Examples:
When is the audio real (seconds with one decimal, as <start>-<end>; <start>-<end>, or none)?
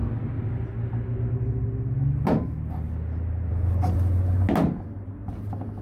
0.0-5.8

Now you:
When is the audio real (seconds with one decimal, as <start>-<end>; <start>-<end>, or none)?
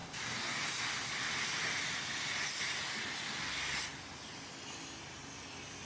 0.0-5.9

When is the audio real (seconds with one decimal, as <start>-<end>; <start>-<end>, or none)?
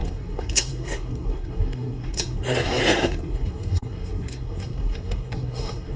none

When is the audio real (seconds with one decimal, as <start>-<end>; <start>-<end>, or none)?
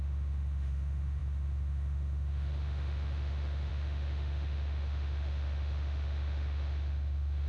none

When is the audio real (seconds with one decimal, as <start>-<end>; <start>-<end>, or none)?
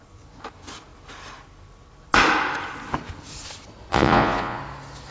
0.0-3.9; 4.6-5.1